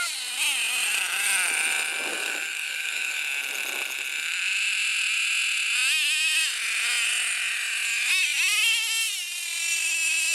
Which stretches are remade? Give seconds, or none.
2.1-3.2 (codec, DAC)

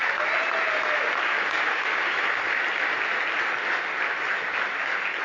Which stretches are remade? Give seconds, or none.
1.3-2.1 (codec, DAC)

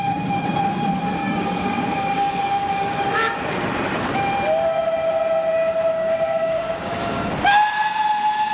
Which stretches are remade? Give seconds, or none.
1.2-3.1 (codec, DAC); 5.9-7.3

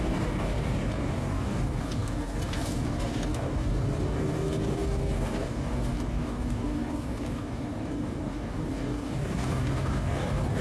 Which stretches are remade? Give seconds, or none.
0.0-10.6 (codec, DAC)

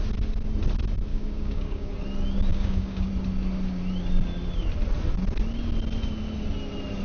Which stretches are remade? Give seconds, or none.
1.1-1.9 (codec, DAC); 2.5-3.1